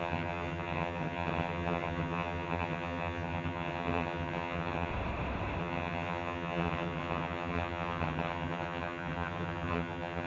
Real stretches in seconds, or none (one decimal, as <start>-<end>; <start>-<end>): 4.9-5.6